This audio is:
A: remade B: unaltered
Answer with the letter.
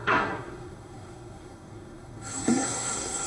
A